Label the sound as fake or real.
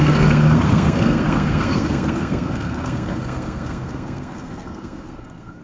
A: fake